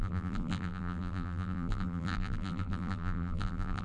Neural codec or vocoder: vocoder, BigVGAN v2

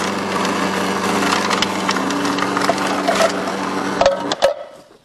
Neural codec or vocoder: none